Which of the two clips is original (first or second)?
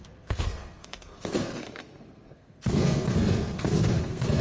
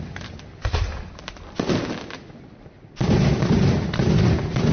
second